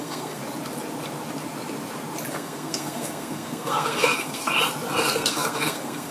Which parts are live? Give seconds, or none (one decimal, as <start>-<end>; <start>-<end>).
0.4-2.3; 4.5-5.0